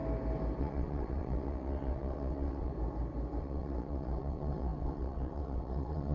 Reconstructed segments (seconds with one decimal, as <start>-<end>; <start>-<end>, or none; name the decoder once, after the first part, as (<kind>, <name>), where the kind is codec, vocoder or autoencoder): 0.6-2.7 (vocoder, WaveNeXt); 3.4-6.1